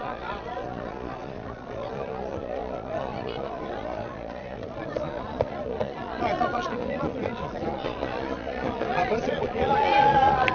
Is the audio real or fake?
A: fake